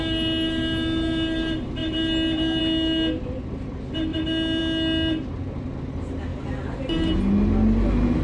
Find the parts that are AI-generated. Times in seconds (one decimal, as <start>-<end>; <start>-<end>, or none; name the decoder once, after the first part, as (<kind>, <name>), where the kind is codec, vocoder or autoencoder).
none